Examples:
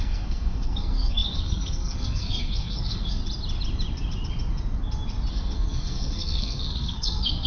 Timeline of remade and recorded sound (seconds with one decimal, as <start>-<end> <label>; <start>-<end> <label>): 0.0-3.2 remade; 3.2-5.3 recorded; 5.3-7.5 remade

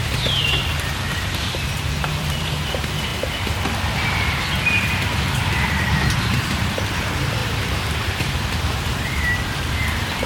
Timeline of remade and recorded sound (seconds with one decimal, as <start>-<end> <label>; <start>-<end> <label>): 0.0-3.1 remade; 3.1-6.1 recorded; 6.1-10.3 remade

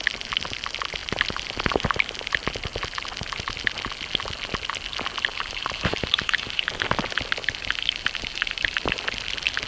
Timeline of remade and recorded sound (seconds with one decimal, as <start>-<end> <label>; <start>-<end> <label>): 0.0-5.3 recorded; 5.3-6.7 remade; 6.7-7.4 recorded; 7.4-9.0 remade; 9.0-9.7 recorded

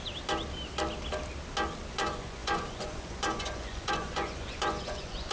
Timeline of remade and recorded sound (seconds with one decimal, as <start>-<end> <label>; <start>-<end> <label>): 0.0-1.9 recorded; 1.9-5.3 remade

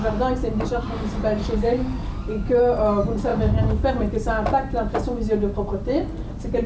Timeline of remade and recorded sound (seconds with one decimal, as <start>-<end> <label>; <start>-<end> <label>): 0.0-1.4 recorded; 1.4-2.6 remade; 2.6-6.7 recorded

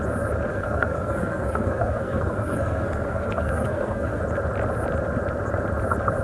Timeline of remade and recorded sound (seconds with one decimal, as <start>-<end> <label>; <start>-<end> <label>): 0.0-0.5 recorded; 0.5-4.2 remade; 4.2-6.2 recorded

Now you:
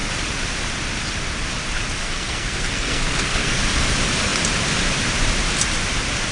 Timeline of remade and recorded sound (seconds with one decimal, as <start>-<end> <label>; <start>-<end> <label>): 0.0-2.0 recorded; 2.0-3.6 remade; 3.6-6.3 recorded

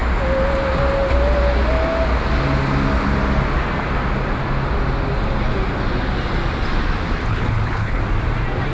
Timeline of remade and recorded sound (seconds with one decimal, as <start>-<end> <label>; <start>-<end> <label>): 0.0-7.3 recorded; 7.3-8.0 remade; 8.0-8.7 recorded